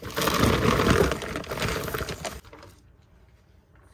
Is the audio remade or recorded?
recorded